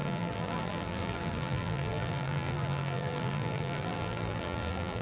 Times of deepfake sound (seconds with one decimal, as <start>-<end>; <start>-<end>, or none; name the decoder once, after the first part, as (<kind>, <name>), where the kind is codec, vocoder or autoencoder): 0.0-5.0 (vocoder, BigVGAN v2)

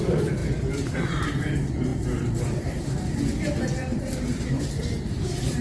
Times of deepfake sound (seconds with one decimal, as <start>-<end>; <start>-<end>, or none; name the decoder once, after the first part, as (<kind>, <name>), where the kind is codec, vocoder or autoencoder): 0.0-0.4 (vocoder, BigVGAN v2); 1.3-5.6

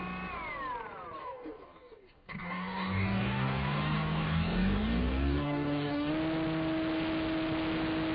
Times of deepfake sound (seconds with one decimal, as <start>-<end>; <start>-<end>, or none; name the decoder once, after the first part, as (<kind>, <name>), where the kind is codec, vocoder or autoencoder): 1.2-6.1 (codec, DAC)

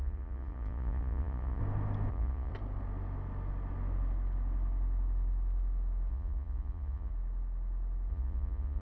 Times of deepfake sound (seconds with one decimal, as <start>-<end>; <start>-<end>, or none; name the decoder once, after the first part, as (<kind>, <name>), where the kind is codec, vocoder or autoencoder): 0.0-1.6 (vocoder, Vocos); 2.1-2.5; 6.1-7.1; 8.1-8.8

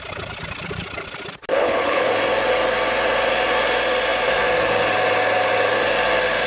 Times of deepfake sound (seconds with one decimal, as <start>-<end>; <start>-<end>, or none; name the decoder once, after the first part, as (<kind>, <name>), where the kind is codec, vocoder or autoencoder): 1.5-2.1 (codec, HILCodec)

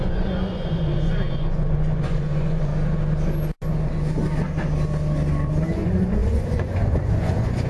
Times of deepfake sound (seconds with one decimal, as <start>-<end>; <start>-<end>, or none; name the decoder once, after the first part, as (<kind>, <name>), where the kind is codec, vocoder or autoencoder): 0.0-2.7 (vocoder, Vocos); 5.6-7.7

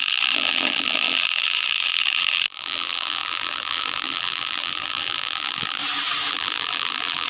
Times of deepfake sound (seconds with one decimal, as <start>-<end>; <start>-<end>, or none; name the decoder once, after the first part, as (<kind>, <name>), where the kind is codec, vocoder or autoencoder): 0.0-5.8 (vocoder, BigVGAN v2); 6.3-7.3

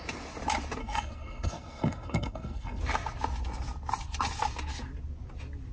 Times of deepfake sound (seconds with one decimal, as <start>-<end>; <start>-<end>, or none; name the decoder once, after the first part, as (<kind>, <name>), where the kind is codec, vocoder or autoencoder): 0.8-2.8 (codec, SNAC)